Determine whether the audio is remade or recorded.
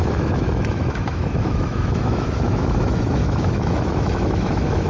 remade